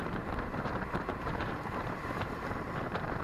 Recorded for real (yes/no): no